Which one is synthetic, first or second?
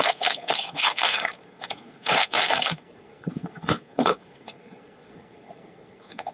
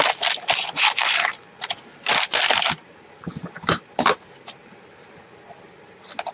first